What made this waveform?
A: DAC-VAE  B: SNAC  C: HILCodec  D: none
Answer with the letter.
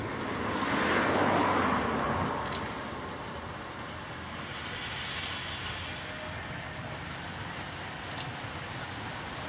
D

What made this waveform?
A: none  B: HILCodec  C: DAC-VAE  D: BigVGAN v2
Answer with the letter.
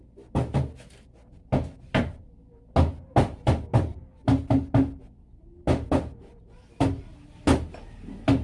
A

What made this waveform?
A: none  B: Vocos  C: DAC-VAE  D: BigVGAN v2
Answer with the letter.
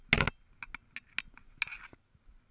A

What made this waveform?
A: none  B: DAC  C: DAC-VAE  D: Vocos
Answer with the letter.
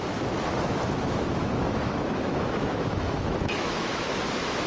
C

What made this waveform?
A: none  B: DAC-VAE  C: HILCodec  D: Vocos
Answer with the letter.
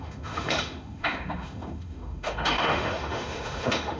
B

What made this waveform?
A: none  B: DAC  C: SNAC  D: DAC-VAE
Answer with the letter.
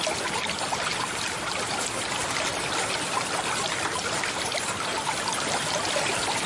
A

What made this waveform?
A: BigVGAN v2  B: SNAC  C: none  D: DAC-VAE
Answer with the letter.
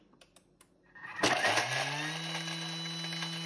C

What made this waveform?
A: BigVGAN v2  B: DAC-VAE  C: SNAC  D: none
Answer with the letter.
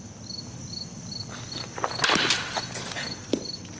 D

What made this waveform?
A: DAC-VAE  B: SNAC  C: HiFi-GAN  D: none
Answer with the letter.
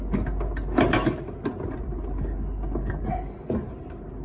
D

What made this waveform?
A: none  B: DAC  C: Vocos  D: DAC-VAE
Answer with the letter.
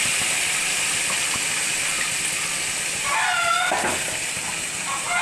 A